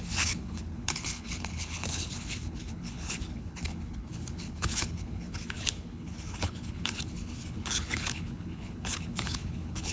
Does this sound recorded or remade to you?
remade